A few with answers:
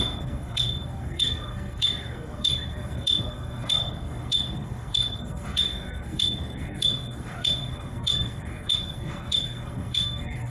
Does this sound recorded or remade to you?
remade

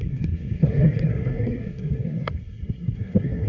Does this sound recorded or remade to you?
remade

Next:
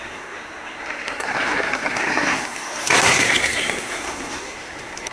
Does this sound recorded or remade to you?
remade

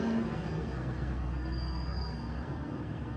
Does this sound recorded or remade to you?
remade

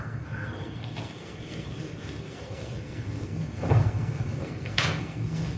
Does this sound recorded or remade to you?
remade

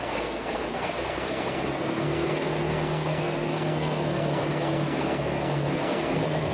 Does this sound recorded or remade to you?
remade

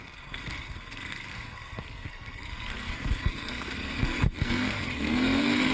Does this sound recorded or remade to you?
remade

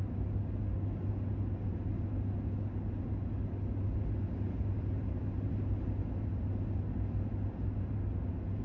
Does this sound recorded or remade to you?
recorded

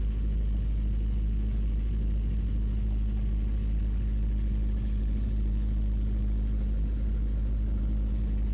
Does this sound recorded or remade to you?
recorded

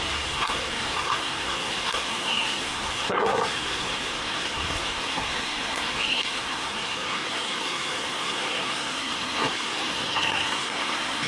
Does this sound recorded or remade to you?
remade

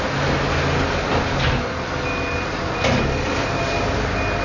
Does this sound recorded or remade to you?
recorded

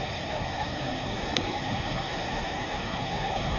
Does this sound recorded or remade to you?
remade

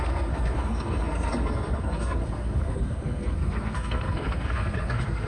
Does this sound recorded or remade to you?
remade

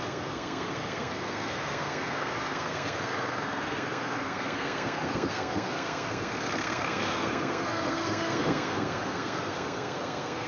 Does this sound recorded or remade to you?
remade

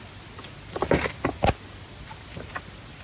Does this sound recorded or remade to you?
recorded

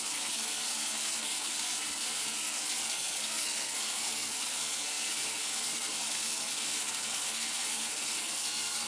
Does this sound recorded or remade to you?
remade